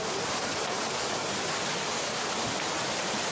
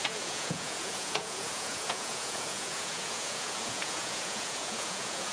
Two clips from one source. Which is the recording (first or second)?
first